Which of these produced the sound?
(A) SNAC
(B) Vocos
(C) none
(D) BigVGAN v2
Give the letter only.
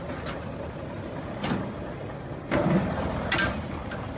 C